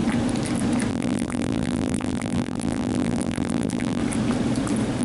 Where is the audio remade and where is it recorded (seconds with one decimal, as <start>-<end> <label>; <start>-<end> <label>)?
0.0-0.9 recorded; 0.9-4.0 remade; 4.0-5.0 recorded